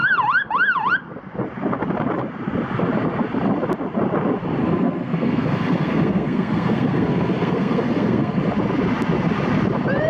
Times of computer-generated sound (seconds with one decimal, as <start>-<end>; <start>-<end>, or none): 4.6-8.4